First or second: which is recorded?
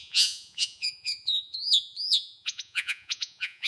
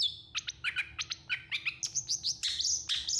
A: second